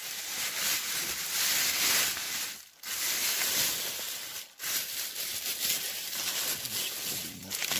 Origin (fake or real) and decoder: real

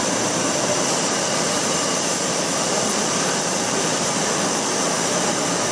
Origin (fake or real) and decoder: fake, vocoder, BigVGAN v2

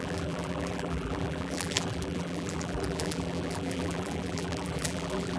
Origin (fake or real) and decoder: fake, vocoder, BigVGAN v2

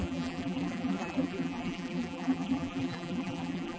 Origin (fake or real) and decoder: fake, vocoder, BigVGAN v2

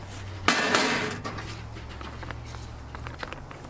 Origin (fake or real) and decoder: real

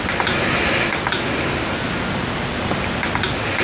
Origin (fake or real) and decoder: real